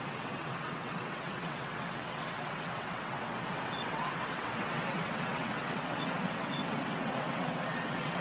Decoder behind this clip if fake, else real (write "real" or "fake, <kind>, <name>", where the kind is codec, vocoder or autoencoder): fake, vocoder, WaveNeXt